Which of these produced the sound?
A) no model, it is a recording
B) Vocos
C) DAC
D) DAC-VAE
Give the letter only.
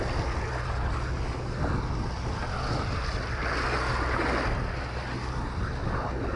A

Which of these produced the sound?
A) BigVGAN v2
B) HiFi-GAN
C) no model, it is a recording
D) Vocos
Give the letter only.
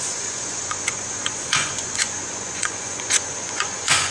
D